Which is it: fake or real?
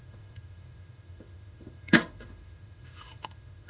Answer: fake